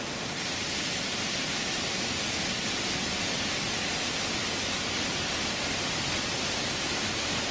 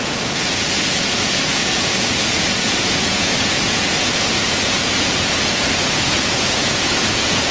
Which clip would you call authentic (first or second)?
first